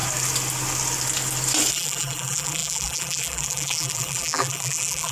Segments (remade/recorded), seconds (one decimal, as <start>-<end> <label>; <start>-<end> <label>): 0.0-1.7 recorded; 1.7-5.1 remade